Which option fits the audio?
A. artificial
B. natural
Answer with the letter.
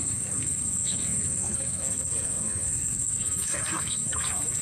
A